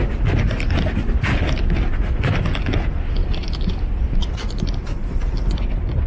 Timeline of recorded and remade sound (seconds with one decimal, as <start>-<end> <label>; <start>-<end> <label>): 0.0-3.2 recorded; 3.2-3.7 remade; 3.7-6.1 recorded